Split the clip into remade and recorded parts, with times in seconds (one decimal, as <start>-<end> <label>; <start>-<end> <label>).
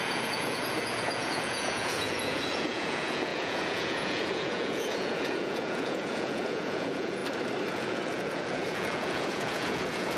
0.0-7.2 remade; 7.2-7.7 recorded; 7.7-10.2 remade